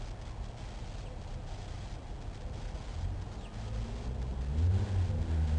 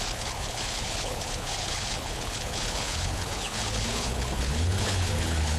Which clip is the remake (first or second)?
second